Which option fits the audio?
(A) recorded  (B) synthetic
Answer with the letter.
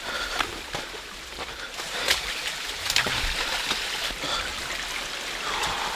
A